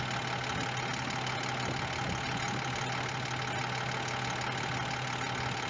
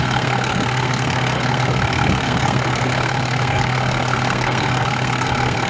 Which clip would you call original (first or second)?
first